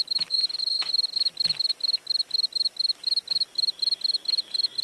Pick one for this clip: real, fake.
real